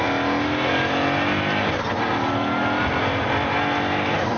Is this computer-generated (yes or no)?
no